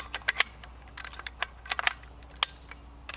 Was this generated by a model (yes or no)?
no